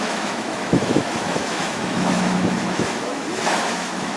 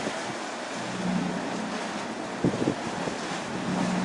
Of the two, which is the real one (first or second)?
second